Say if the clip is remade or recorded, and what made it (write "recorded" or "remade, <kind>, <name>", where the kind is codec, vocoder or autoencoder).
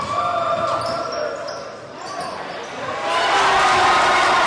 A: recorded